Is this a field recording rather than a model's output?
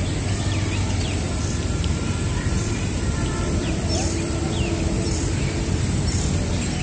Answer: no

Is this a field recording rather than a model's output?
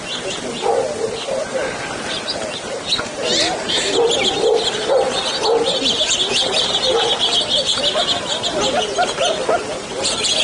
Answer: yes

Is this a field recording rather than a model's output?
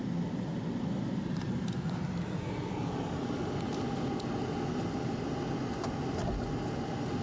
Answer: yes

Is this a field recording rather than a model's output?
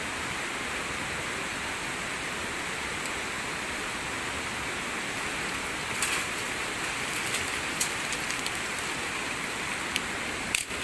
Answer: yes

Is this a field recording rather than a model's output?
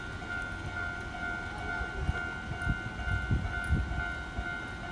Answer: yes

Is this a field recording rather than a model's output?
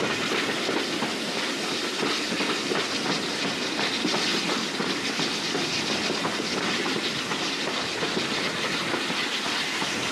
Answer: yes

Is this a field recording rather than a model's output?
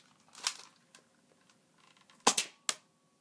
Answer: yes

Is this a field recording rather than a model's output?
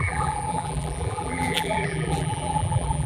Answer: no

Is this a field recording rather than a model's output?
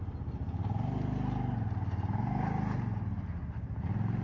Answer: yes